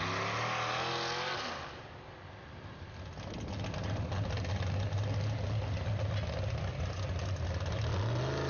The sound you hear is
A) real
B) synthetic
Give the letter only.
A